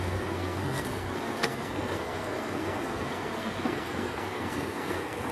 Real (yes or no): no